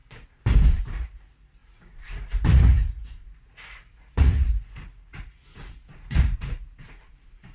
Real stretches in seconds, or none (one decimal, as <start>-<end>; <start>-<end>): 0.0-0.8